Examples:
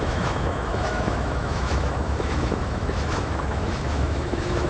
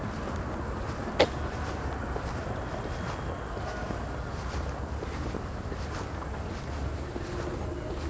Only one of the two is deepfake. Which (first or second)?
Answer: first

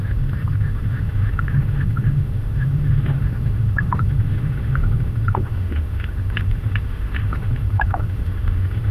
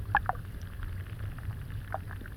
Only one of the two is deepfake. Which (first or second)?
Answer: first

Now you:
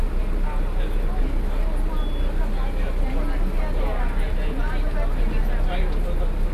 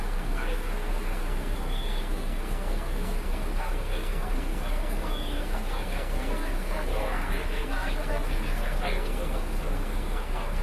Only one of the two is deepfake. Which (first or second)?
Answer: second